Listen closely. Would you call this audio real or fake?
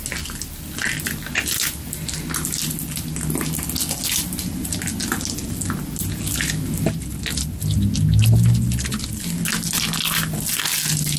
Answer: real